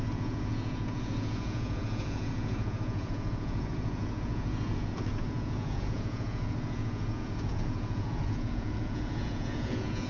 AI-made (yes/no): yes